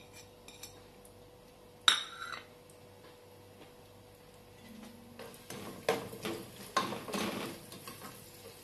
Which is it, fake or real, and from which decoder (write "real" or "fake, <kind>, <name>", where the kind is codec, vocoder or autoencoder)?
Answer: real